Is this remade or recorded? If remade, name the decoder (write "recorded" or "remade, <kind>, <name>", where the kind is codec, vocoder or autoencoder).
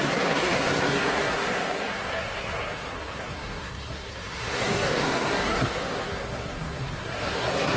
remade, codec, SNAC